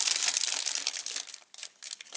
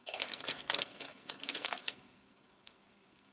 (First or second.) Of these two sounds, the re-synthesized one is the second